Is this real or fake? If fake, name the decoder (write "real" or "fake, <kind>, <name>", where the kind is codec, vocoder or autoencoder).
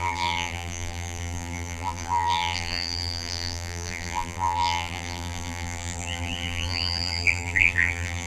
fake, vocoder, BigVGAN v2